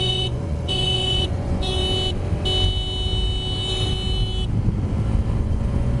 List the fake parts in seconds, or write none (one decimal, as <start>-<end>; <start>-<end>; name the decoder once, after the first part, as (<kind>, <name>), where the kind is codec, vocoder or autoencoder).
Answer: 0.0-1.8 (vocoder, Vocos); 5.4-6.0